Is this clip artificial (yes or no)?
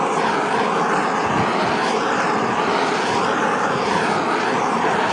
no